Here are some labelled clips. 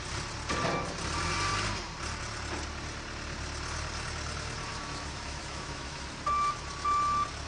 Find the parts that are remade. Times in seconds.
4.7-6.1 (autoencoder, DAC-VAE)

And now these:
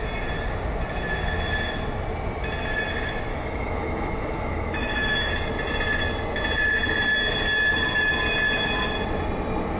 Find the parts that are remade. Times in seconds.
3.3-5.3 (autoencoder, DAC-VAE)

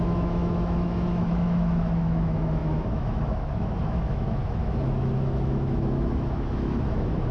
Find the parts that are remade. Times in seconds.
0.0-7.3 (autoencoder, DAC-VAE)

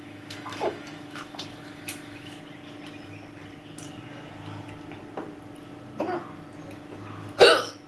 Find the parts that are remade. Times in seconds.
0.0-2.4 (autoencoder, DAC-VAE)

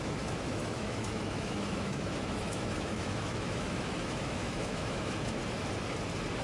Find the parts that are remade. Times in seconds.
0.0-5.4 (autoencoder, DAC-VAE)

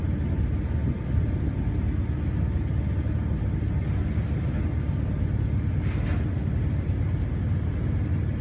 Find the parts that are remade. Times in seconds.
none